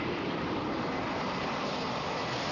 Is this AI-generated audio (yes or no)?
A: no